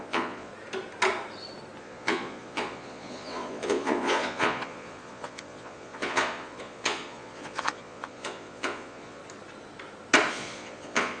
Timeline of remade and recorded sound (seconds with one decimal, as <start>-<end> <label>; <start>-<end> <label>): 0.0-0.5 remade; 0.5-1.8 recorded; 1.8-9.2 remade; 9.2-10.3 recorded; 10.3-11.2 remade